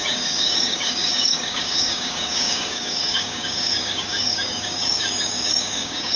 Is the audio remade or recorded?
remade